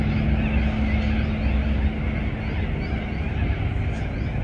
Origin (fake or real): real